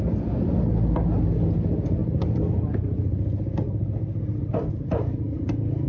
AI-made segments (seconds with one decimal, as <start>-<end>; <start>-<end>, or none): none